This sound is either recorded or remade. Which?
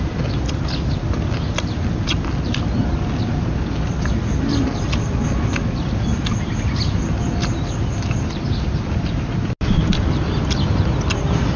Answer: recorded